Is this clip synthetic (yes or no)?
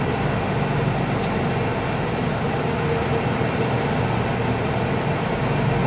no